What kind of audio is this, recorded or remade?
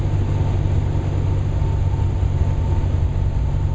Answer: recorded